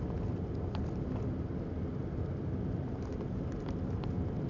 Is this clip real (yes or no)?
yes